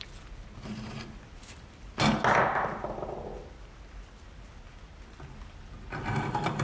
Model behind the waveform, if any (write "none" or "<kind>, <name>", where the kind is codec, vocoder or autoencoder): none